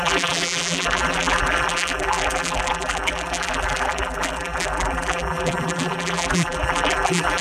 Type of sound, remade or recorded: remade